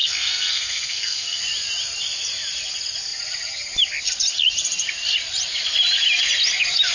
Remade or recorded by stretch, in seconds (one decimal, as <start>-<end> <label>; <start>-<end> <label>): 0.0-1.4 remade; 1.4-6.9 recorded